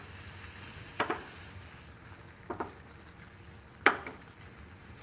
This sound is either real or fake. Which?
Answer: real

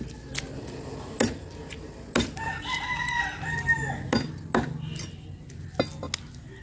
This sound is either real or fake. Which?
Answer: real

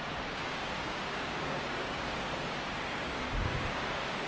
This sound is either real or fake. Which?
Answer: fake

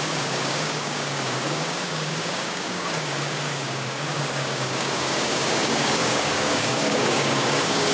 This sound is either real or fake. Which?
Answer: fake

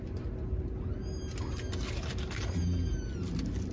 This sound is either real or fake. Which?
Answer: real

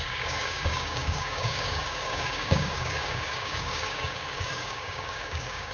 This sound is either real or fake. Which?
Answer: fake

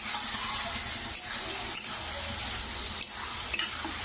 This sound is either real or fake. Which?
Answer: real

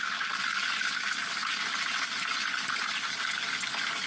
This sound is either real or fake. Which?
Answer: real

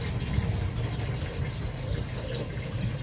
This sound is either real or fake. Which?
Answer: real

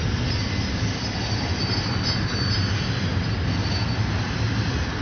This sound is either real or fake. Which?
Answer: real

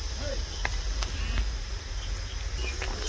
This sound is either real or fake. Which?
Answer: real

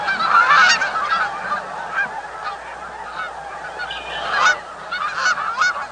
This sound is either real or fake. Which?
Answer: real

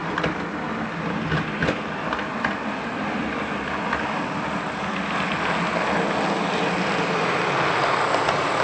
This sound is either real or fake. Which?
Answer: real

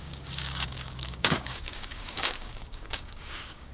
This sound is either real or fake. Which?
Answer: fake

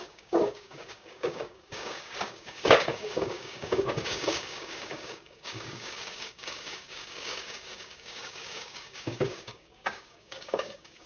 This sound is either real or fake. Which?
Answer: fake